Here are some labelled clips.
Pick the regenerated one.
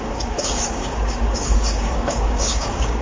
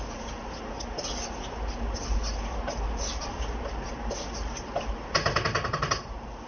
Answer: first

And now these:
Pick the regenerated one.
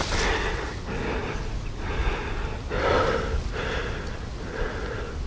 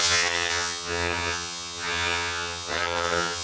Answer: second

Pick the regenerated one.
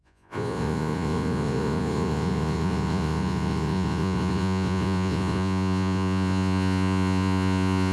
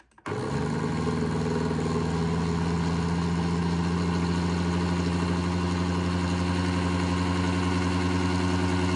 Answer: first